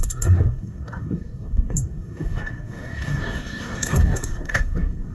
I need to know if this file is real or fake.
fake